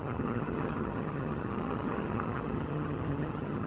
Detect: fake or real fake